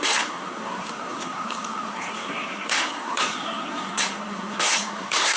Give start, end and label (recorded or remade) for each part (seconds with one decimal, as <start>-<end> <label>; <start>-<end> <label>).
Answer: 0.0-5.4 remade